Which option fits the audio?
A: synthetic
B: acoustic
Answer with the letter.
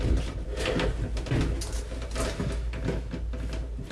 B